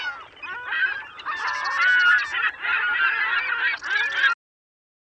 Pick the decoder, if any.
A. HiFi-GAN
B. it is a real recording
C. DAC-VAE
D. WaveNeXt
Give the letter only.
B